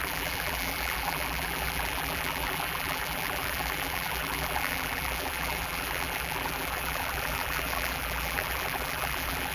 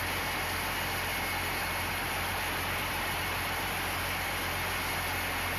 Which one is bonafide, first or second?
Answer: second